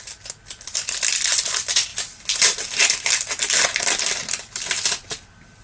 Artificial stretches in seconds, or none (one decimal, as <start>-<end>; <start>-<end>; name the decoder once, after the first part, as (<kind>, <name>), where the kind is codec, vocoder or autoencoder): none